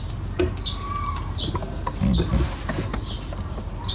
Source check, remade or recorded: recorded